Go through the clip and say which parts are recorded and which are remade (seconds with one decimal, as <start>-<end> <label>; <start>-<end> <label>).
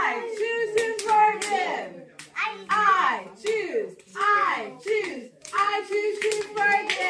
0.0-4.1 recorded; 4.1-4.8 remade; 4.8-5.2 recorded; 5.2-6.2 remade; 6.2-7.1 recorded